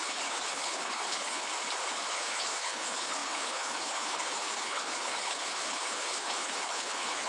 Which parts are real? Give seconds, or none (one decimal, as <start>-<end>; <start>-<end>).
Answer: 1.5-2.1